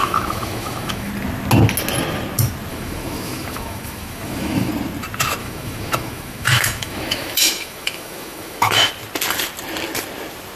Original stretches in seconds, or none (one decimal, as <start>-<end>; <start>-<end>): 1.1-2.7; 4.7-5.4; 8.9-10.6